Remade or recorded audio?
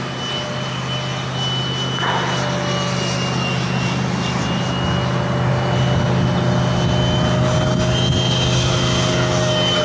recorded